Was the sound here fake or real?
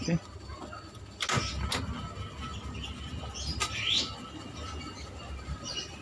real